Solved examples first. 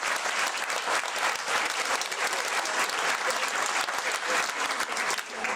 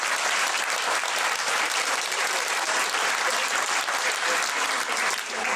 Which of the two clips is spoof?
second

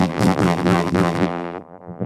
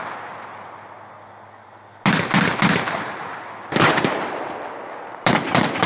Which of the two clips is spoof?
first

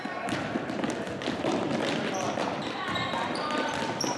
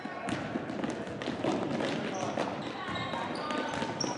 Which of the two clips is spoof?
first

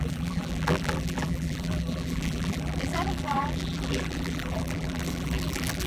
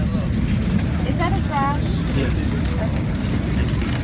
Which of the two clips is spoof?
first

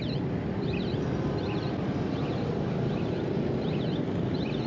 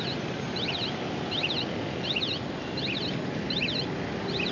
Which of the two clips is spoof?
first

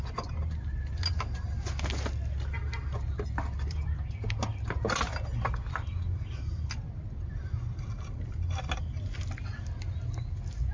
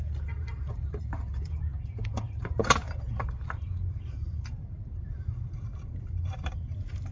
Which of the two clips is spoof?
second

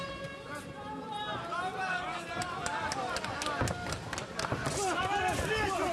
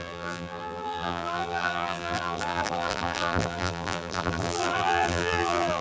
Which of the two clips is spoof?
second